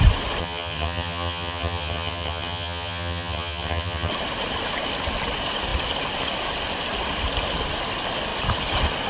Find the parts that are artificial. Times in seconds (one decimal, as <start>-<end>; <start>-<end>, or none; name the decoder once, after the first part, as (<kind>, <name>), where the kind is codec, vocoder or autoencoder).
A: 0.4-4.1 (vocoder, HiFi-GAN)